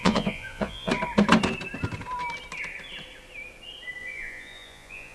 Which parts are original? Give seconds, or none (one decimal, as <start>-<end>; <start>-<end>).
0.9-4.0